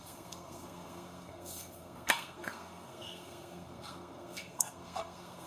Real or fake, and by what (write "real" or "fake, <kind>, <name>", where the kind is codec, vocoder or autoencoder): fake, codec, SNAC